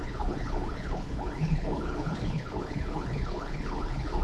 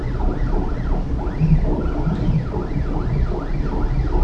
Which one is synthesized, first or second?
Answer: first